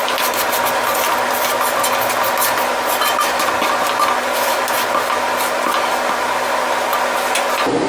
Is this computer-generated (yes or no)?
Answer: no